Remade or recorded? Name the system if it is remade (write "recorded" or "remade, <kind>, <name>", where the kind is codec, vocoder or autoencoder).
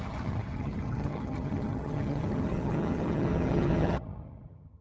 remade, vocoder, HiFi-GAN